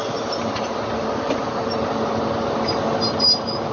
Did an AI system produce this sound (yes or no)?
yes